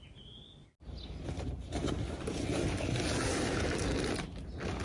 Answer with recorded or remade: recorded